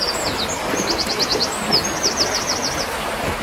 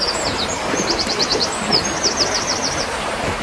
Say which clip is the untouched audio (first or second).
first